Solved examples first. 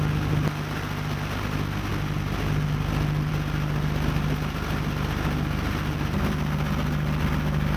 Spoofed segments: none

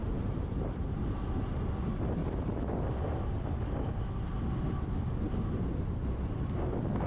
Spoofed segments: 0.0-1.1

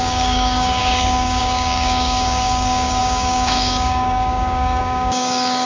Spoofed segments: 0.0-5.6

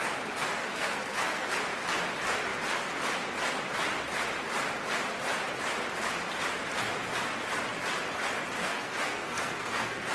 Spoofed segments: 0.6-1.5; 8.6-10.1

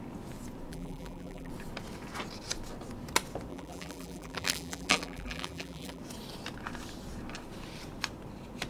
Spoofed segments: 0.7-1.5; 3.5-6.0

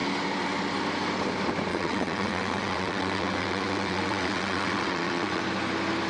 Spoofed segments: 1.7-5.4

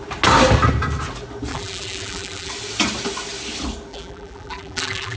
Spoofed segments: 1.5-2.5; 3.9-5.2